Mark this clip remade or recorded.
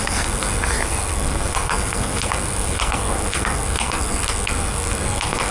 remade